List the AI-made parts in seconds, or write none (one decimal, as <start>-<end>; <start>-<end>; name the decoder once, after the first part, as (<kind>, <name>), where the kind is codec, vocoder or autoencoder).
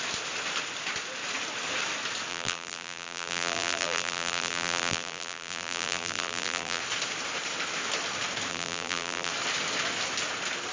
2.3-6.8 (vocoder, BigVGAN v2); 8.5-9.3